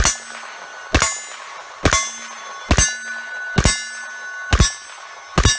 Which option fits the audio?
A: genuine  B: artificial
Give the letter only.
A